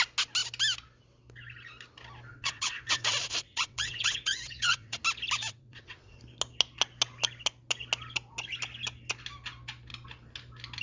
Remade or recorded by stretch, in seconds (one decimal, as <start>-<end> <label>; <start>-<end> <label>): 0.0-2.3 recorded; 2.3-5.0 remade; 5.0-5.4 recorded; 5.4-6.2 remade; 6.2-10.8 recorded